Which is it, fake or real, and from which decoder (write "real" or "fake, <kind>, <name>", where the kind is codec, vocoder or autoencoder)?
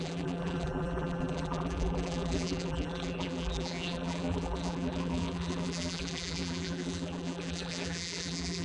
fake, vocoder, BigVGAN v2